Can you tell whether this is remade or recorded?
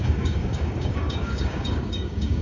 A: remade